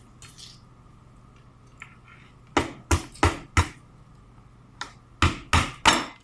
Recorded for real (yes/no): yes